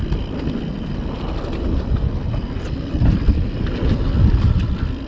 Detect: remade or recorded recorded